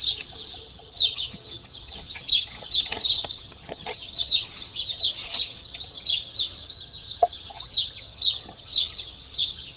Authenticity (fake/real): fake